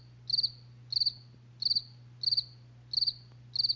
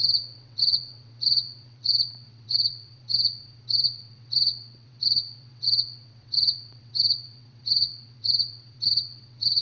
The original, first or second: first